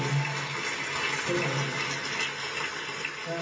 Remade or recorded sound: recorded